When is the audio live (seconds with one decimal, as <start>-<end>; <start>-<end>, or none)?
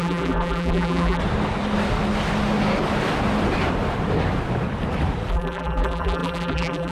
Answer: 1.2-5.3